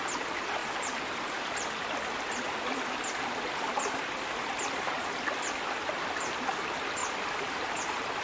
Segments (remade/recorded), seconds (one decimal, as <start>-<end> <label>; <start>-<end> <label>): 0.0-0.6 remade; 0.6-1.4 recorded; 1.4-8.2 remade